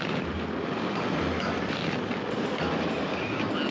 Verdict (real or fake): real